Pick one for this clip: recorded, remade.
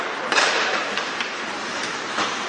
remade